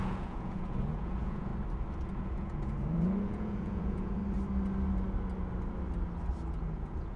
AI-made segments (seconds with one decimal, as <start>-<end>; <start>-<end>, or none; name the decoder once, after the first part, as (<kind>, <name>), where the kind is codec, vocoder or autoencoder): 0.0-1.5 (vocoder, Vocos); 2.2-4.2; 6.5-7.2